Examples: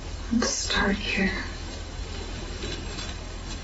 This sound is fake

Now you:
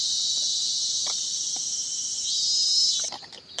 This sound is real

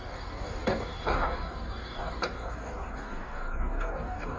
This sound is fake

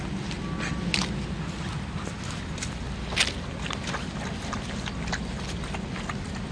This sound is real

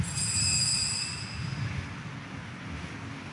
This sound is real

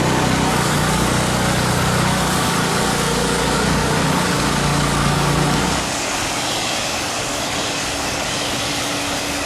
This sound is fake